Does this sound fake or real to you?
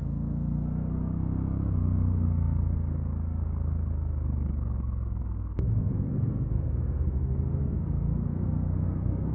fake